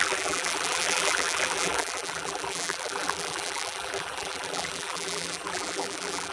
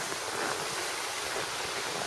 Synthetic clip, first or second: first